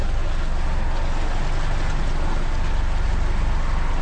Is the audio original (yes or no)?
yes